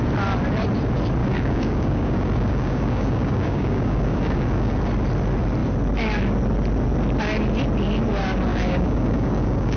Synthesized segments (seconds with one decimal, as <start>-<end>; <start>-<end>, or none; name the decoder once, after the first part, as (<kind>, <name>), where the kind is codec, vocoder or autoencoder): 1.2-4.7 (codec, DAC); 8.5-9.8